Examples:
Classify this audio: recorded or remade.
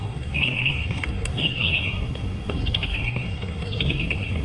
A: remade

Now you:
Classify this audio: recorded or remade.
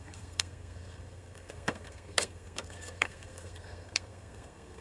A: remade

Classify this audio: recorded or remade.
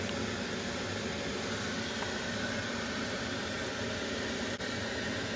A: recorded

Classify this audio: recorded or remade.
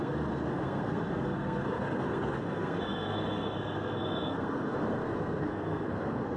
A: remade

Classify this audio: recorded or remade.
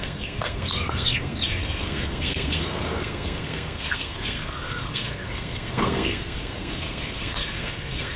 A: remade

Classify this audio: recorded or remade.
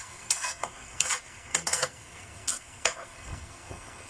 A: remade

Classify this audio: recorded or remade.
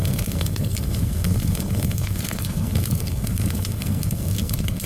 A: remade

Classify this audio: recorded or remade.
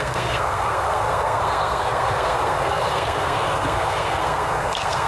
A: remade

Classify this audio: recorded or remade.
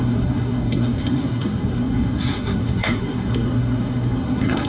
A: remade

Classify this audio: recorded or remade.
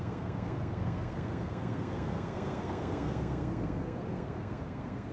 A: remade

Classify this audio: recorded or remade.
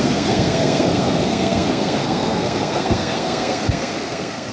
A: remade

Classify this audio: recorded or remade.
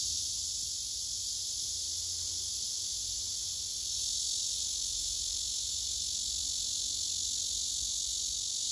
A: recorded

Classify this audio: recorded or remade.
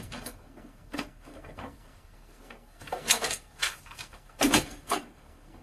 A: remade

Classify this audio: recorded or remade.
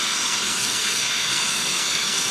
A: remade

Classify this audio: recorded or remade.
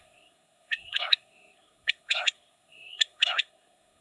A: remade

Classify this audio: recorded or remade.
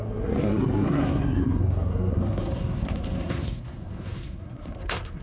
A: remade